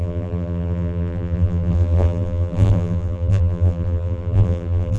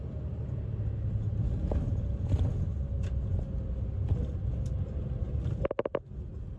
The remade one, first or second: first